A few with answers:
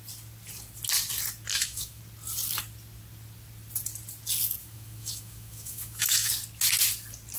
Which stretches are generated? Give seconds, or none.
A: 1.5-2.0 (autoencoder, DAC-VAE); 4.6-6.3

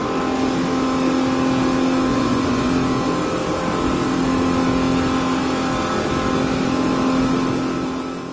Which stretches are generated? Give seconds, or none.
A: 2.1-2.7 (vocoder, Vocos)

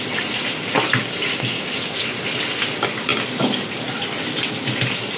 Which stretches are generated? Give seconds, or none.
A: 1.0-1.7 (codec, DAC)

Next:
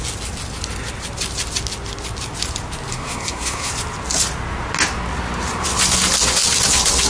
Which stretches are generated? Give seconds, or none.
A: 2.9-3.7 (codec, SNAC)

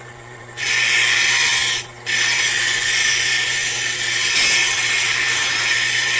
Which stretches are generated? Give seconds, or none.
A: 0.0-1.5 (vocoder, Vocos); 2.6-3.6; 5.7-6.2

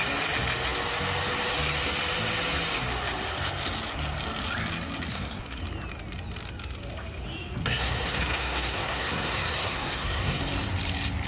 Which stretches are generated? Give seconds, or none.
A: 5.1-5.6 (codec, SNAC); 7.6-10.4

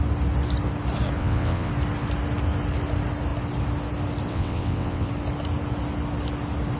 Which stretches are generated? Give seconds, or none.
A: 1.2-1.7 (vocoder, WaveNeXt); 4.3-5.1